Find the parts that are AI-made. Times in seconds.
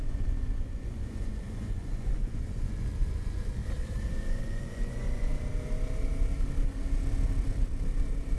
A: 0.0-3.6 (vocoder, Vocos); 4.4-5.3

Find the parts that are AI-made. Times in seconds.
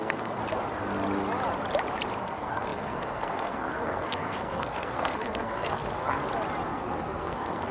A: 0.0-0.4 (codec, SNAC); 2.2-6.2; 6.7-7.7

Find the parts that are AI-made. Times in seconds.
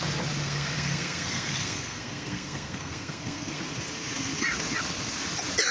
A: 0.4-3.6 (codec, SNAC)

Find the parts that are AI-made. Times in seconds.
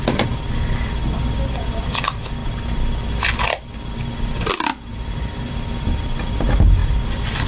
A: 4.9-5.5 (vocoder, BigVGAN v2)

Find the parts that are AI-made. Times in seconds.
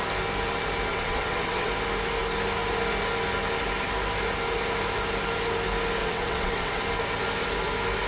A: 0.9-1.7 (vocoder, WaveNeXt); 6.0-6.8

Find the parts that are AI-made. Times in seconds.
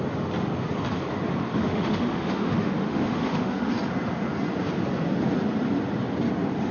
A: 1.5-3.7 (autoencoder, DAC-VAE)